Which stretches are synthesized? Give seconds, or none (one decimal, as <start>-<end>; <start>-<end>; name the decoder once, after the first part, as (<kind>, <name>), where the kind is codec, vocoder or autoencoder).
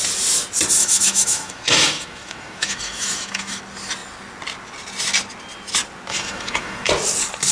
0.8-3.6 (autoencoder, DAC-VAE); 6.1-6.9